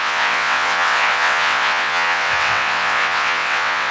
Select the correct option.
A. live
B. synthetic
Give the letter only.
B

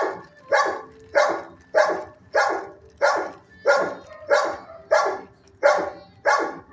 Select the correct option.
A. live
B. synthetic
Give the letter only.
A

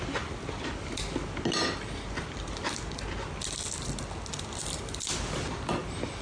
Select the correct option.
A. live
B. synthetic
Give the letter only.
A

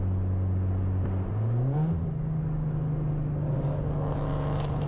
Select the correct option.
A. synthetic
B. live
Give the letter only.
B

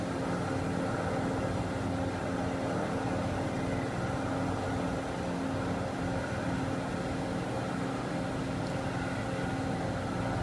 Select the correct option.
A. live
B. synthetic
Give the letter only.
A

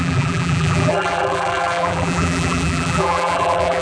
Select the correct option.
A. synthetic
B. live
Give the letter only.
A